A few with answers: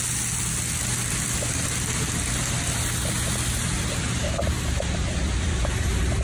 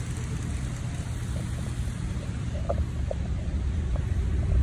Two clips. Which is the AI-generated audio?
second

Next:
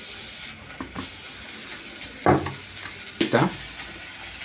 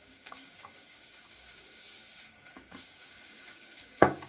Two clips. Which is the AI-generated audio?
second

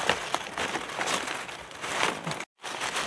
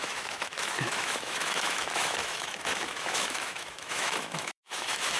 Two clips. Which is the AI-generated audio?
second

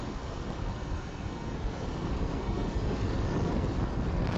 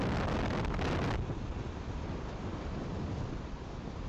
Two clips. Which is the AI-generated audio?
first